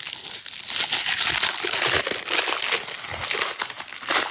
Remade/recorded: recorded